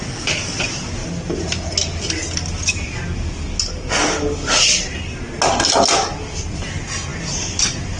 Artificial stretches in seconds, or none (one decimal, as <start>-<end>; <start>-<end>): none